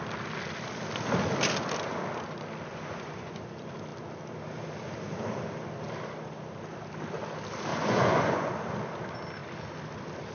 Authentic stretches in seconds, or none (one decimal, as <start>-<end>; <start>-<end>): 0.0-2.7; 3.4-7.7; 8.5-10.3